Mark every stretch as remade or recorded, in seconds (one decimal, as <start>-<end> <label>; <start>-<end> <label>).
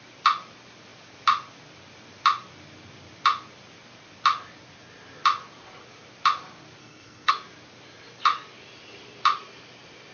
0.0-6.8 recorded; 6.8-7.3 remade; 7.3-10.1 recorded